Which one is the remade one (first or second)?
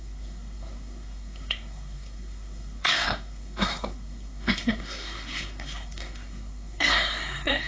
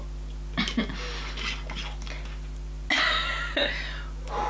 first